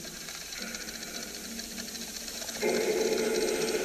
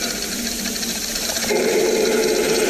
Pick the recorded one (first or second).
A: first